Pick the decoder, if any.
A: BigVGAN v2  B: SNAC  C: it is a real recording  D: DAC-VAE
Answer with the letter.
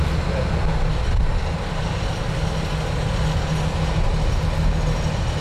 C